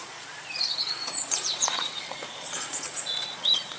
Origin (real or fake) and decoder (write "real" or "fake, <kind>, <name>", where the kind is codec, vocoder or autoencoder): fake, vocoder, Vocos